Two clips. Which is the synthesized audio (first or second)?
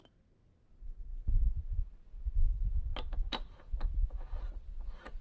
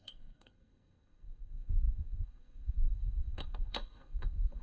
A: second